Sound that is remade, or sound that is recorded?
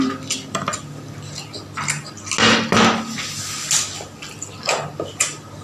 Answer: recorded